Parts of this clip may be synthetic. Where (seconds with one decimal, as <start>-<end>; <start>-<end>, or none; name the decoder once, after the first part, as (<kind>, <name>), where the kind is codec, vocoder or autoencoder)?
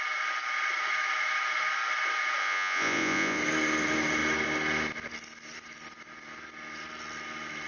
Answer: 2.4-3.4 (vocoder, Vocos)